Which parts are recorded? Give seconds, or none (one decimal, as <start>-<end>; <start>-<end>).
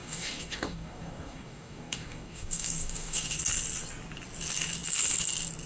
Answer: 3.4-5.7